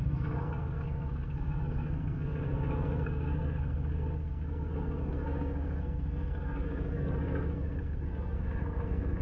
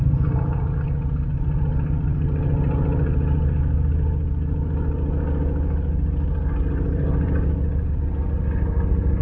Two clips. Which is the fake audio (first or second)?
first